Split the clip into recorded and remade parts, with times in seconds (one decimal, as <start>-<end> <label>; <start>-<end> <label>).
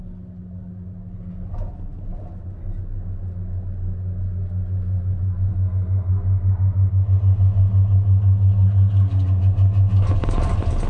0.0-5.5 recorded; 5.5-6.1 remade; 6.1-10.9 recorded